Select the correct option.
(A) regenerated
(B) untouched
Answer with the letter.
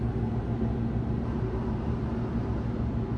B